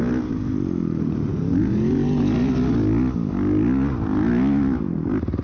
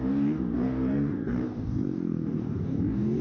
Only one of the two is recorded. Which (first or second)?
first